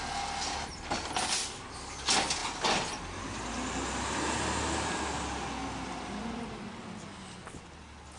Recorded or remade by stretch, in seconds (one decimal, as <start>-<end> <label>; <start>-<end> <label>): 0.0-8.2 recorded